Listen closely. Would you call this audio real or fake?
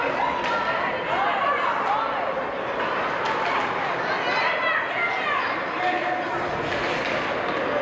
real